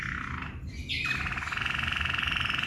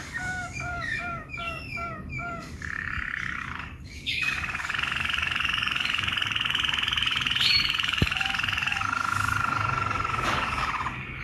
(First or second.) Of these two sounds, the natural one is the first